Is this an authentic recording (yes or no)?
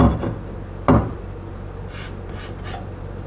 yes